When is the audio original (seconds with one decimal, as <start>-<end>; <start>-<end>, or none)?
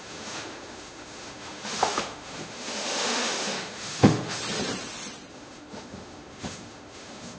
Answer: 4.4-5.3